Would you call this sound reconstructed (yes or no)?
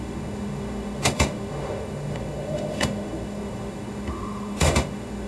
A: yes